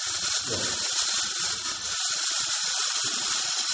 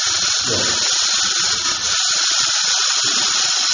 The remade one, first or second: first